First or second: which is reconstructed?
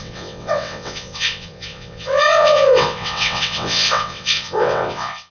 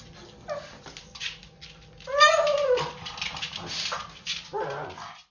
first